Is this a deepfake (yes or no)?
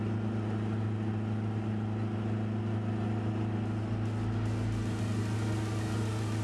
no